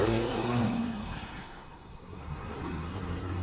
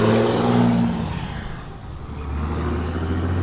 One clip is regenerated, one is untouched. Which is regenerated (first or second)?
first